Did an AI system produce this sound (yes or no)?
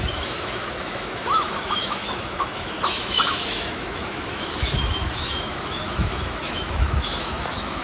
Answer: yes